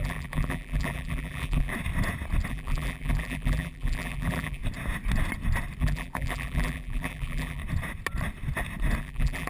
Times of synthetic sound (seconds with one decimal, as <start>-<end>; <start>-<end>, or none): 0.0-1.7; 2.5-4.6; 5.8-7.6; 9.0-9.5